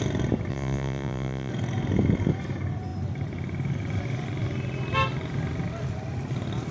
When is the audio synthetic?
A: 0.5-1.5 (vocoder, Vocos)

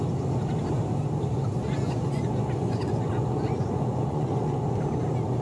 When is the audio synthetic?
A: 1.6-4.8 (vocoder, Vocos)

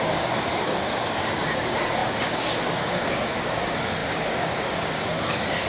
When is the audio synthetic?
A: 0.0-5.7 (codec, DAC)

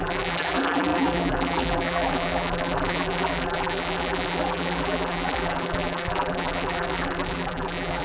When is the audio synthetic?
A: 0.0-8.0 (vocoder, BigVGAN v2)

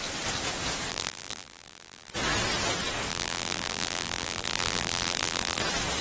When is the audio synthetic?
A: 0.9-2.1 (vocoder, BigVGAN v2); 3.1-5.6